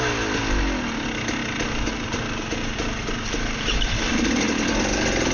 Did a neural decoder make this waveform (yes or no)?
no